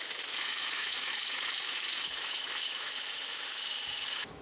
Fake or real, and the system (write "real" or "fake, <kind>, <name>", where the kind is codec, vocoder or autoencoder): fake, autoencoder, DAC-VAE